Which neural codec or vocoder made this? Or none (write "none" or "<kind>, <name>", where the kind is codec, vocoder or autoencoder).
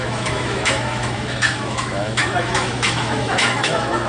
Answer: autoencoder, DAC-VAE